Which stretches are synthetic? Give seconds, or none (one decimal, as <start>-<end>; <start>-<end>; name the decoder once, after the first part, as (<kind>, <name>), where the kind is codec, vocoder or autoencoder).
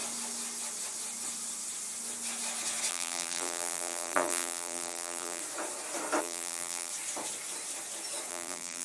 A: 2.9-5.4 (vocoder, BigVGAN v2); 6.2-6.9; 8.3-8.8